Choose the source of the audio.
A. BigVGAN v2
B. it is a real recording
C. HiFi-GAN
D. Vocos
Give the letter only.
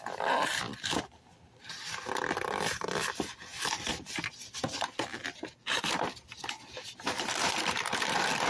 A